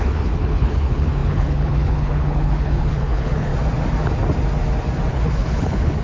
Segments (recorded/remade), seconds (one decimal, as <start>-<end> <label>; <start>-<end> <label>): 0.0-3.5 remade; 3.5-5.1 recorded; 5.1-6.0 remade